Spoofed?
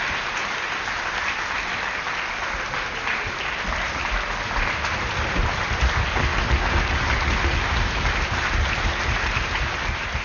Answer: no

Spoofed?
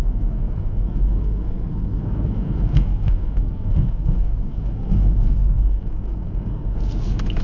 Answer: yes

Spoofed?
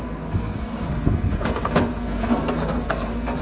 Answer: yes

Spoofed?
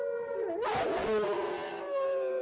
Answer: no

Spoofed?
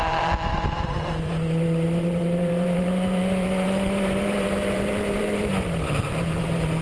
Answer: yes